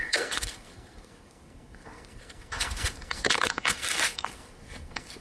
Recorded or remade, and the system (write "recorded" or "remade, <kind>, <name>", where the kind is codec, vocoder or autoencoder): remade, codec, SNAC